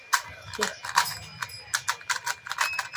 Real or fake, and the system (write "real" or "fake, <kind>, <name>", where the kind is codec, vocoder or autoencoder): fake, vocoder, BigVGAN v2